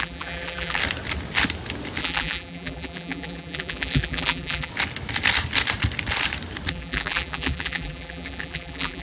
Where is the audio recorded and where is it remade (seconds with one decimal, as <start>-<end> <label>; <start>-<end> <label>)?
0.0-0.8 remade; 0.8-2.0 recorded; 2.0-4.7 remade; 4.7-6.7 recorded; 6.7-9.0 remade